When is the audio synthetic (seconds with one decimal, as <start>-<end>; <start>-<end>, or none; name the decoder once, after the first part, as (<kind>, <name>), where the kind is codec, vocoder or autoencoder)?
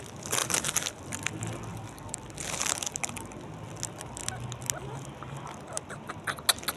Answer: 0.4-1.2 (vocoder, BigVGAN v2); 1.7-2.4